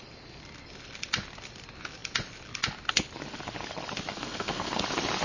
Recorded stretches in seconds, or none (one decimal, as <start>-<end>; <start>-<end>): 0.0-4.1; 4.8-5.2